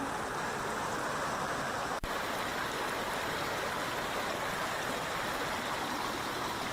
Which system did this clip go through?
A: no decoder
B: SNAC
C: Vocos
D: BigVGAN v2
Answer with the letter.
A